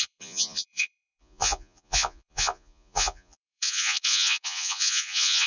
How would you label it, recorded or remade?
remade